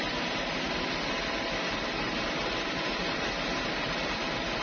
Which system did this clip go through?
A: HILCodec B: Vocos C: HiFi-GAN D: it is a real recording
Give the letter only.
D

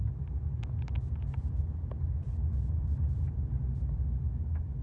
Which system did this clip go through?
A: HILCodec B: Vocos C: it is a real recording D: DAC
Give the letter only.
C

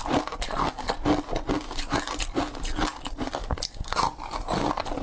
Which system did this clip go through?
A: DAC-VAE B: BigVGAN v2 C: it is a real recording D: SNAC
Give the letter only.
C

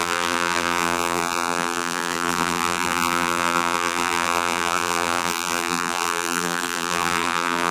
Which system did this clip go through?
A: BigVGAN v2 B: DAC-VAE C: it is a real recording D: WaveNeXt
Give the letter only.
A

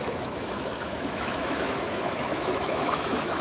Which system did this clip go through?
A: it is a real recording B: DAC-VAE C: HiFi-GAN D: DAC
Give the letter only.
B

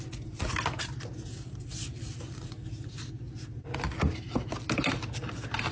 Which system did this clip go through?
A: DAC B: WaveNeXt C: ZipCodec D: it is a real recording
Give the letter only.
D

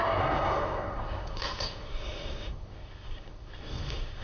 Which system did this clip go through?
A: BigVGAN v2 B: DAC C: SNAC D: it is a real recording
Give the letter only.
C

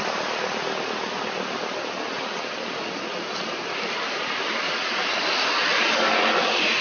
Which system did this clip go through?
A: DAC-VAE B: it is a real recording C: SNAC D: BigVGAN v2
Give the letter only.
B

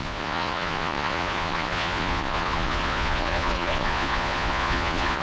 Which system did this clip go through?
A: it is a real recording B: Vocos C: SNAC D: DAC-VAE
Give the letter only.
B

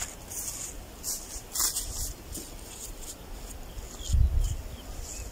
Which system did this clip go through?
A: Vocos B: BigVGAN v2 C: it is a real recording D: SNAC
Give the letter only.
C